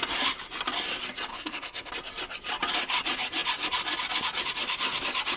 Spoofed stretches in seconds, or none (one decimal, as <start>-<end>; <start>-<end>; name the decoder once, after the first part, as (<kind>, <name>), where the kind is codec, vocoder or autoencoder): 1.3-1.9 (codec, SNAC)